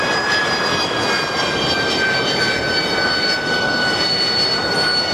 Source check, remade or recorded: recorded